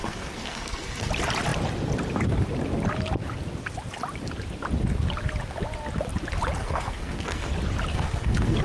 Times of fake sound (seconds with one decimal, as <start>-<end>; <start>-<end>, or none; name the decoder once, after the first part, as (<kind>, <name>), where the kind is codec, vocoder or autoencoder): 0.0-1.1 (codec, SNAC); 6.6-7.5; 7.9-8.6